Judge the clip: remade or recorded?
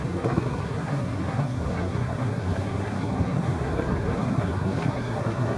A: remade